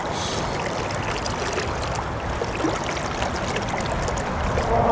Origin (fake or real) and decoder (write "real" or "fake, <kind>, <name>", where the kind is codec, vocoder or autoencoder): real